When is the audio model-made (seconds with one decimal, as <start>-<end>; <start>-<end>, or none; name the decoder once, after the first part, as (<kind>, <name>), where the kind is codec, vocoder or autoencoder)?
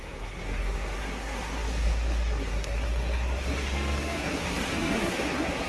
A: 0.0-5.7 (codec, SNAC)